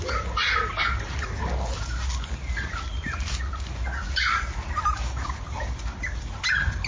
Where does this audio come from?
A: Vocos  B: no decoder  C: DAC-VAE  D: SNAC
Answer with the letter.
B